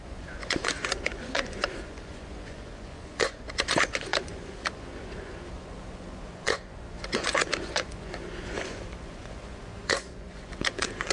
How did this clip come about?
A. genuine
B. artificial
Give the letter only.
B